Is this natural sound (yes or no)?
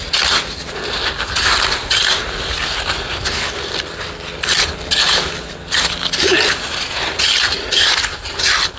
yes